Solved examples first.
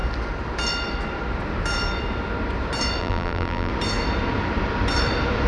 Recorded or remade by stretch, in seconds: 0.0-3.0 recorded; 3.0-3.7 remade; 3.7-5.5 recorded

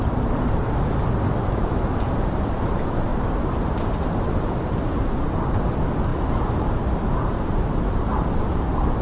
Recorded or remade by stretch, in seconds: 0.0-3.1 remade; 3.1-4.1 recorded; 4.1-9.0 remade

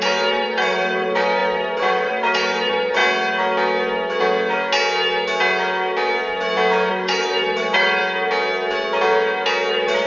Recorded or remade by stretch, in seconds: 0.0-3.0 remade; 3.0-6.9 recorded; 6.9-8.0 remade; 8.0-9.7 recorded; 9.7-10.1 remade

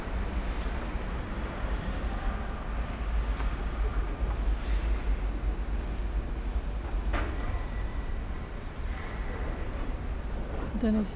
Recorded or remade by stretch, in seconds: 0.0-7.9 recorded; 7.9-10.3 remade; 10.3-11.2 recorded